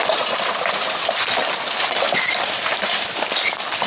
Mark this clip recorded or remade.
recorded